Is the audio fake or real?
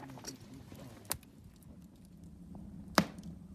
real